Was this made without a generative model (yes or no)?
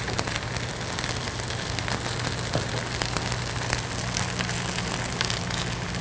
yes